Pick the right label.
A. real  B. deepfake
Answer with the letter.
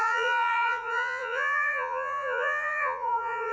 B